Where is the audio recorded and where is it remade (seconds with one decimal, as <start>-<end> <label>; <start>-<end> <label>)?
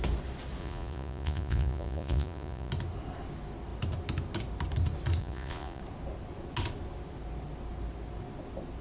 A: 0.0-0.6 recorded; 0.6-2.7 remade; 2.7-5.2 recorded; 5.2-5.8 remade; 5.8-8.8 recorded